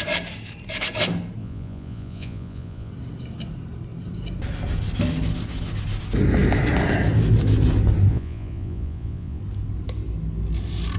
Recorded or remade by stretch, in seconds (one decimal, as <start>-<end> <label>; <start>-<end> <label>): 0.0-1.4 recorded; 1.4-2.9 remade; 2.9-8.1 recorded; 8.1-9.4 remade; 9.4-11.0 recorded